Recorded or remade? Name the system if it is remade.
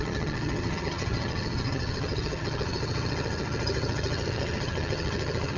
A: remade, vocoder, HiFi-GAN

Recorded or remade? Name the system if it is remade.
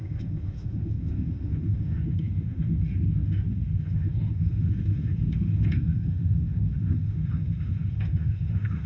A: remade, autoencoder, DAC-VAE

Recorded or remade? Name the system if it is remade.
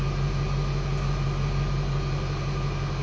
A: recorded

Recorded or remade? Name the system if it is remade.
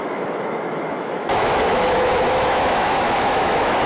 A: remade, autoencoder, DAC-VAE